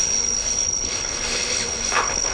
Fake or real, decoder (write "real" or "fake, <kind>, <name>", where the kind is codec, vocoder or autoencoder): fake, codec, HILCodec